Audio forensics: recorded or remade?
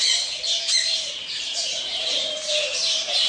remade